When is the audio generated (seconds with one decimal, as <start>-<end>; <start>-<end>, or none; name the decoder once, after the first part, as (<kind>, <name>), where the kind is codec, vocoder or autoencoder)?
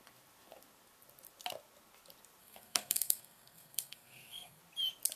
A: 2.4-4.6 (codec, SNAC)